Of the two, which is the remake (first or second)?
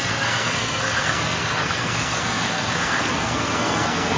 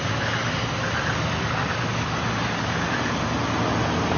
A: first